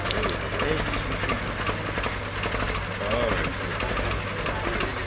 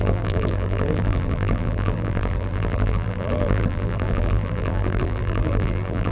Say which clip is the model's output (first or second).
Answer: second